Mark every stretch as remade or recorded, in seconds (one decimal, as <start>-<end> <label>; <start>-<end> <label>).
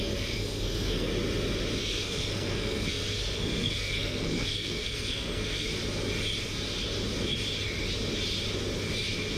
0.0-1.1 remade; 1.1-1.8 recorded; 1.8-5.7 remade; 5.7-9.4 recorded